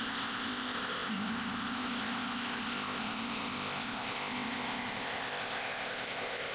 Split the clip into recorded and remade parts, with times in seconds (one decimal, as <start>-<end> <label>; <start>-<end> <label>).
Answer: 0.0-6.5 remade